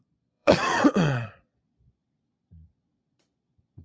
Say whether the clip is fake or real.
fake